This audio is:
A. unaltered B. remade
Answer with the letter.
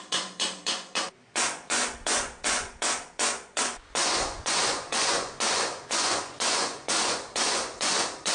B